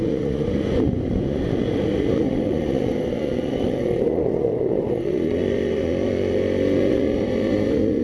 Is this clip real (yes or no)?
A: no